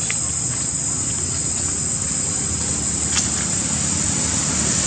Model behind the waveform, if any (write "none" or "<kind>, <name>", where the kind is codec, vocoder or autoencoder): none